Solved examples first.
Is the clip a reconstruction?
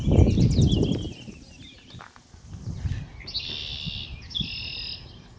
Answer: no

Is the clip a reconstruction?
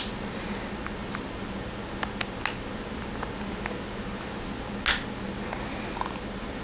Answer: no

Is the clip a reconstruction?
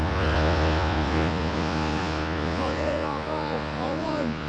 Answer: yes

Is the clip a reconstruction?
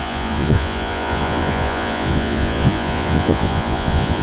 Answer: yes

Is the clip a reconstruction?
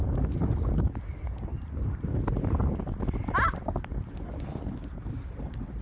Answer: no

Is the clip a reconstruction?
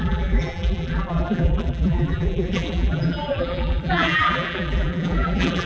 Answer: yes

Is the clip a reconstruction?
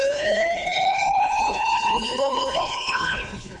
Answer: yes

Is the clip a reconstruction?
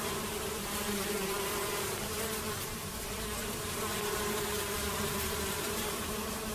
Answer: yes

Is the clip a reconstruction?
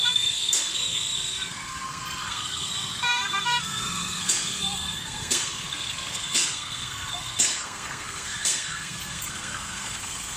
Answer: yes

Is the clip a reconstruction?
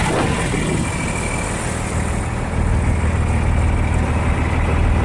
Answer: no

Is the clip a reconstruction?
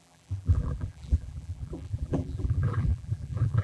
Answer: yes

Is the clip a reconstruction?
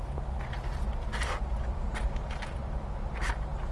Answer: no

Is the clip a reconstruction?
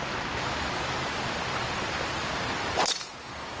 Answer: no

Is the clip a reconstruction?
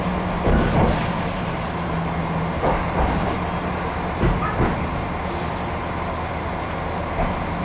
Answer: no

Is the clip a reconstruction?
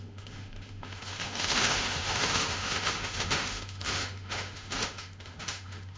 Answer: yes